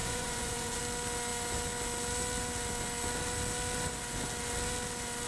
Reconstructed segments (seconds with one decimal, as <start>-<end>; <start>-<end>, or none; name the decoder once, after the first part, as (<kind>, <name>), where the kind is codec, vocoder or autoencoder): 0.0-0.8 (vocoder, Vocos)